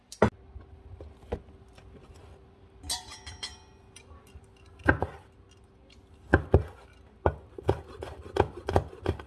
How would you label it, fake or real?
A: real